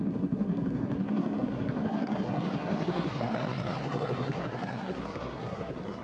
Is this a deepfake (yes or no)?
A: yes